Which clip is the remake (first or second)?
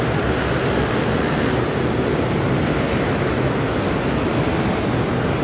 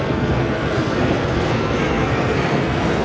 second